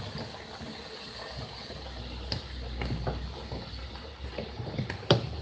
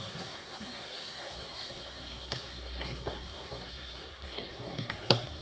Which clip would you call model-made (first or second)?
second